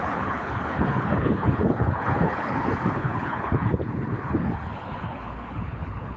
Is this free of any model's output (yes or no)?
no